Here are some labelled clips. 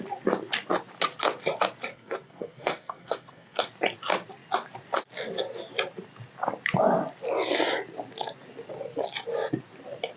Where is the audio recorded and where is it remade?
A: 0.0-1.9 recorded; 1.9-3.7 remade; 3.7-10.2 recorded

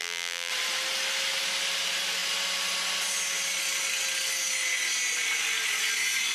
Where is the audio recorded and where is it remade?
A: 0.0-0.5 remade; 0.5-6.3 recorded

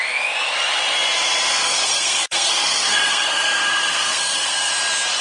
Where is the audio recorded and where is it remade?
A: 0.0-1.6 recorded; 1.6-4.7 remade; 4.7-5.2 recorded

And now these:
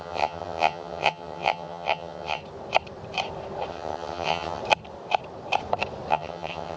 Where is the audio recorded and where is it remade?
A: 0.0-2.4 remade; 2.4-3.7 recorded; 3.7-4.6 remade; 4.6-6.1 recorded; 6.1-6.8 remade

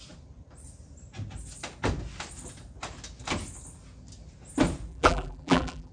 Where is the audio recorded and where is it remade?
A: 0.0-4.9 recorded; 4.9-5.9 remade